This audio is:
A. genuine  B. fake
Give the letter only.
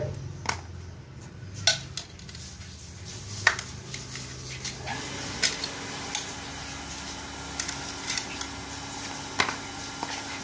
A